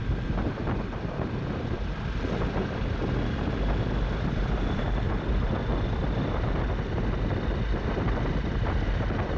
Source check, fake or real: real